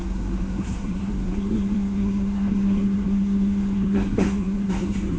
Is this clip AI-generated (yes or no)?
yes